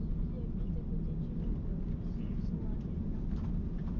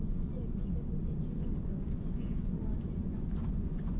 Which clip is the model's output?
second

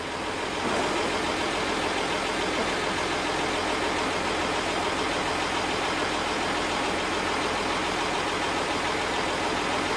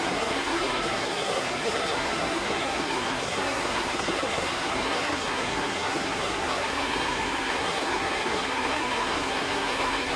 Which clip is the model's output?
second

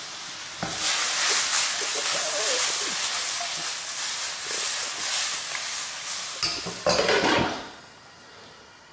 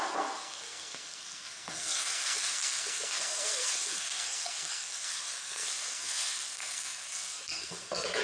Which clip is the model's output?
second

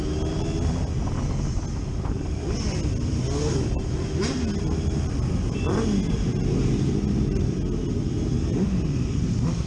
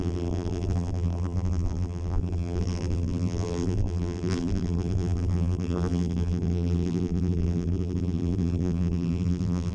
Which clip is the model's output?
second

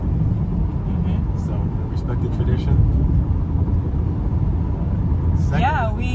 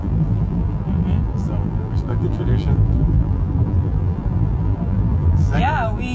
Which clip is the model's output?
second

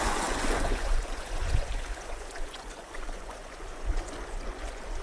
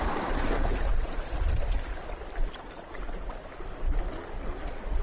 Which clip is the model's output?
first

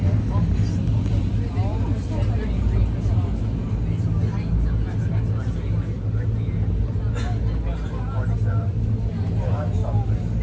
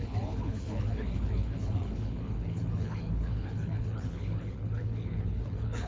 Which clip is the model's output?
second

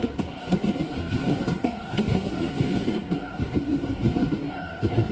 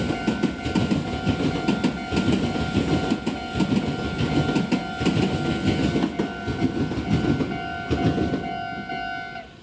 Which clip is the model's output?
first